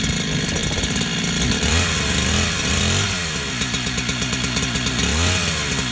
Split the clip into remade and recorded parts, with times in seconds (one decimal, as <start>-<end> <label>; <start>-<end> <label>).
0.0-0.6 recorded; 0.6-2.7 remade; 2.7-5.9 recorded